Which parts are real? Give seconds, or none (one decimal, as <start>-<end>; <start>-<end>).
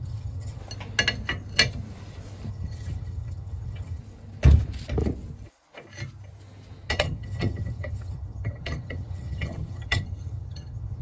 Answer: 0.6-2.5; 4.0-6.9